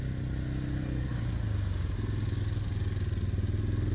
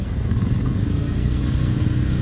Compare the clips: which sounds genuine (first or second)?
first